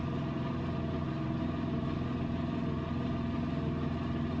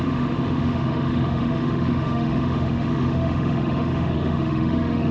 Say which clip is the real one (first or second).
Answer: first